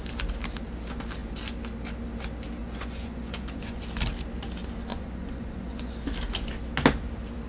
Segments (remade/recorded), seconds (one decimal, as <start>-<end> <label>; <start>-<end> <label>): 0.0-2.6 recorded; 2.6-3.8 remade; 3.8-4.9 recorded; 4.9-5.9 remade; 5.9-7.5 recorded